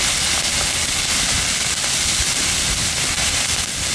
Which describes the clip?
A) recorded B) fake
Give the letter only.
A